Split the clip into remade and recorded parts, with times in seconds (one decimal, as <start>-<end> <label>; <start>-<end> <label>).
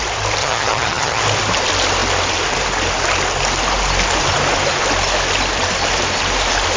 0.0-0.4 recorded; 0.4-1.2 remade; 1.2-6.8 recorded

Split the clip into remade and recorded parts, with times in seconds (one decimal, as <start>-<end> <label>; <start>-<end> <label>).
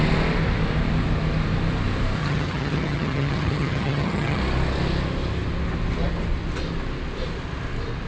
0.0-2.2 recorded; 2.2-4.4 remade; 4.4-8.1 recorded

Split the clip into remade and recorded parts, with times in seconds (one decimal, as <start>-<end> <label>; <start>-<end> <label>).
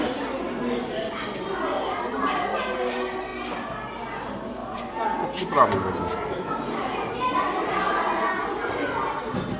0.0-9.6 recorded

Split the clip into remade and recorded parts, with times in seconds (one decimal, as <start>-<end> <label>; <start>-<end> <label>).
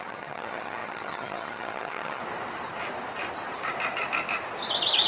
0.0-2.2 remade; 2.2-5.1 recorded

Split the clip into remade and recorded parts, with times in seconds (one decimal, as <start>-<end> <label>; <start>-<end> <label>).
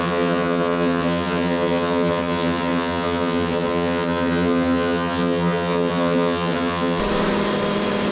0.0-7.0 remade; 7.0-8.1 recorded